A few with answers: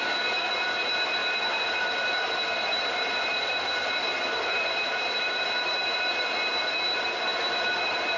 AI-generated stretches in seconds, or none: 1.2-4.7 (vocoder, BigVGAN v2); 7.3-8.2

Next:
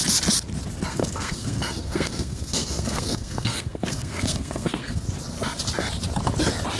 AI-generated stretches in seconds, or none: 0.9-5.0 (codec, SNAC)